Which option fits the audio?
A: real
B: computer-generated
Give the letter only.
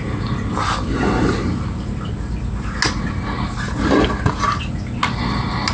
A